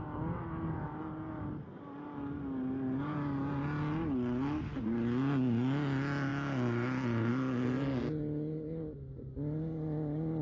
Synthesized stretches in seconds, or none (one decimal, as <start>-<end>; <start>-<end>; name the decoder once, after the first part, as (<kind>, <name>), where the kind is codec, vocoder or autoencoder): none